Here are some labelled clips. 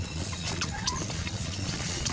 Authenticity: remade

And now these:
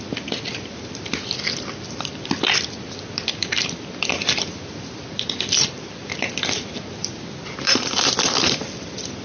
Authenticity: remade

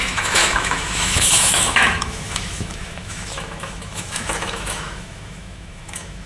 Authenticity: remade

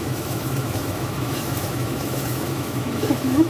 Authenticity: remade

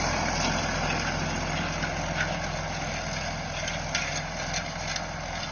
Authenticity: recorded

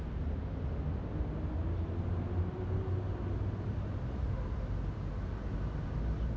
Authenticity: recorded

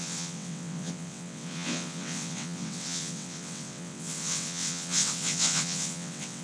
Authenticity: remade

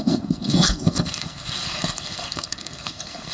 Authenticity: remade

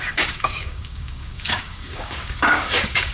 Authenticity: remade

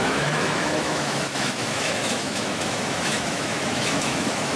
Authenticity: remade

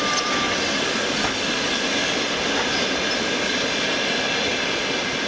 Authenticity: recorded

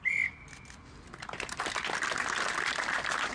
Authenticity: recorded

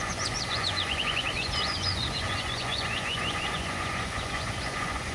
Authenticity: remade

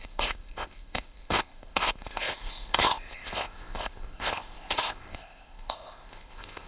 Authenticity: remade